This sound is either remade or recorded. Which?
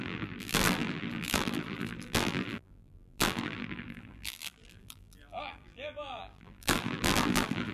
remade